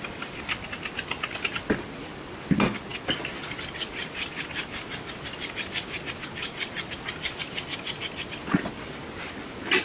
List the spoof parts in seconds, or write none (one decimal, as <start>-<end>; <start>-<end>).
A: none